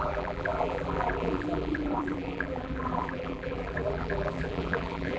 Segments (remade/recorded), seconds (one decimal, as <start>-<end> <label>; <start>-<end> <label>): 0.0-5.2 remade